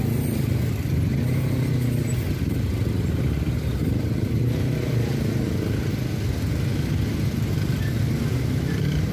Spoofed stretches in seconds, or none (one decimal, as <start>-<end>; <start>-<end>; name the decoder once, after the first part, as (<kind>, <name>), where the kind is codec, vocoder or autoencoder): none